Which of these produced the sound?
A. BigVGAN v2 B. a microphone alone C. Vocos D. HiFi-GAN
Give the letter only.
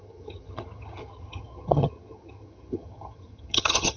D